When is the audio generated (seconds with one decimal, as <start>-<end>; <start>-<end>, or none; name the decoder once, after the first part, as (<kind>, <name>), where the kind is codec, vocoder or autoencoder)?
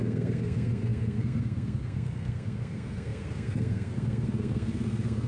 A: 0.0-5.3 (codec, SNAC)